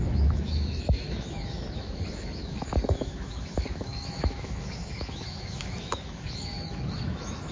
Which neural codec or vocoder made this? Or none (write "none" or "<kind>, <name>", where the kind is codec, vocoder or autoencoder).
autoencoder, DAC-VAE